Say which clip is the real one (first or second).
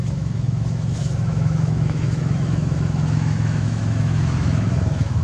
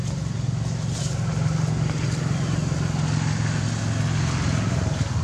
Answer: second